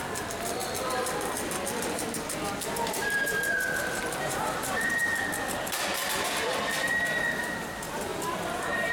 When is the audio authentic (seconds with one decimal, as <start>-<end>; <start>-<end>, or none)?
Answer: 0.0-3.0; 5.0-8.1